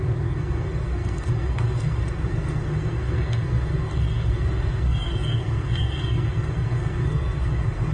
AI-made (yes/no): yes